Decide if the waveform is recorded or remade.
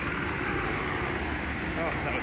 recorded